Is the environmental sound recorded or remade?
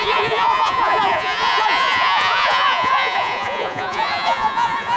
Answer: remade